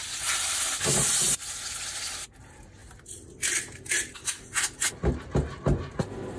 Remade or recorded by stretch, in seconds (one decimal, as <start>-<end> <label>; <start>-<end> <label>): 0.0-2.8 recorded; 2.8-4.4 remade; 4.4-6.4 recorded